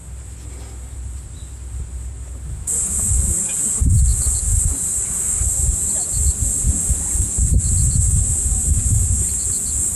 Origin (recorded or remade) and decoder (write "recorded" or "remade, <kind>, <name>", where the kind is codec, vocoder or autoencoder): recorded